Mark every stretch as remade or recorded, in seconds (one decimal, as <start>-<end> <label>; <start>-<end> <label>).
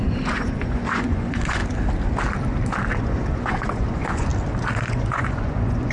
0.0-1.6 remade; 1.6-3.0 recorded; 3.0-4.3 remade; 4.3-4.9 recorded; 4.9-5.9 remade